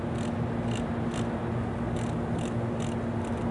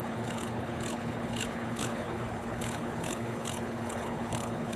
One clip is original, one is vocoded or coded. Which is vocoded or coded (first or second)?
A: second